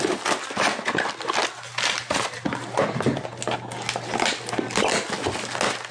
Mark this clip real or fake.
real